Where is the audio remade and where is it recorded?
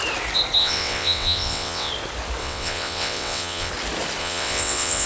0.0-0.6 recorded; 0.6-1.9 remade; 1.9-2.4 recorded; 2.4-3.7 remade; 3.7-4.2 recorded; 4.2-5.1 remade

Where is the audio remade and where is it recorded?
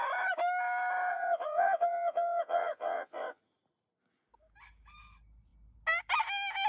0.0-1.1 recorded; 1.1-3.4 remade; 3.4-6.7 recorded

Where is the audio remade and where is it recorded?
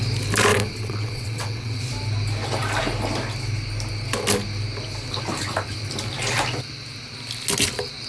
0.0-0.5 recorded; 0.5-1.8 remade; 1.8-8.1 recorded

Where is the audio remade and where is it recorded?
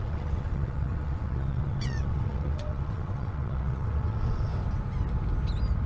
0.0-4.5 remade; 4.5-5.9 recorded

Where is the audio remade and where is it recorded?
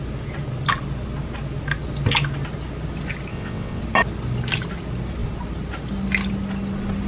0.0-3.3 recorded; 3.3-3.8 remade; 3.8-7.1 recorded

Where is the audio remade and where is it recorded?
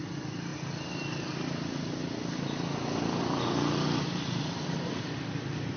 0.0-5.8 recorded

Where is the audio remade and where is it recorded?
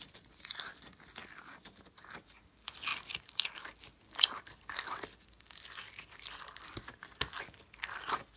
0.0-8.4 recorded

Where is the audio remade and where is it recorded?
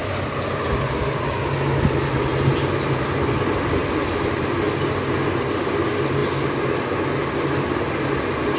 0.0-8.6 recorded